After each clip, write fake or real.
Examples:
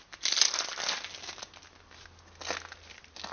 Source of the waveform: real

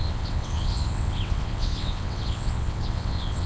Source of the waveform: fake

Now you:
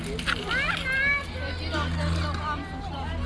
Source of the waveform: real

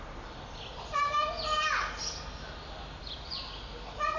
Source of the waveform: real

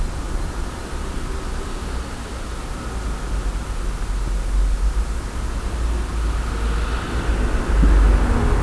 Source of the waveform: real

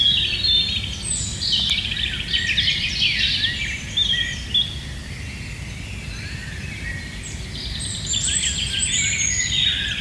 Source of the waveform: real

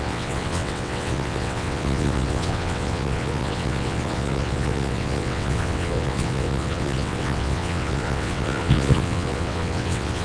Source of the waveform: fake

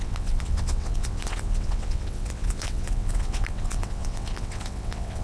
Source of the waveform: fake